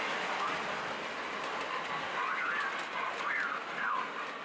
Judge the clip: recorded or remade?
recorded